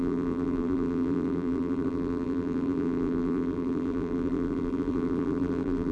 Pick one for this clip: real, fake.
fake